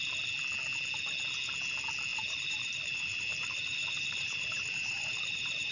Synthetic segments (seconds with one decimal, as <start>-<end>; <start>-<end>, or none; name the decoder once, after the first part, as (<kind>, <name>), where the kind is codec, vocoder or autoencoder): 2.1-5.7 (vocoder, BigVGAN v2)